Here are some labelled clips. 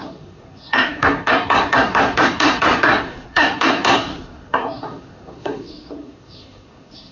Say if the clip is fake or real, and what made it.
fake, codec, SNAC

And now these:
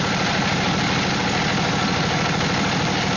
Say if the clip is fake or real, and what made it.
real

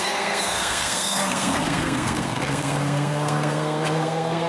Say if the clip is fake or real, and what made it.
fake, codec, SNAC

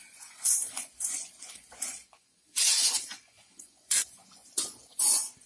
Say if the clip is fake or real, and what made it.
fake, vocoder, Vocos